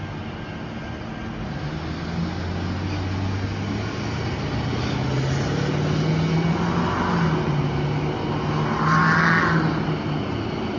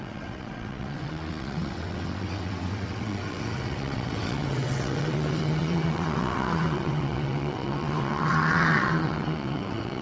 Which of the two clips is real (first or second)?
first